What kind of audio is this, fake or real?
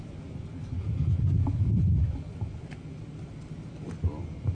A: real